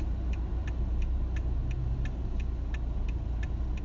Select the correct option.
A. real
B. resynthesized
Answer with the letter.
A